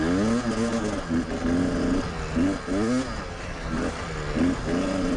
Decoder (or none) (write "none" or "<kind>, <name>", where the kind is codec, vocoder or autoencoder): none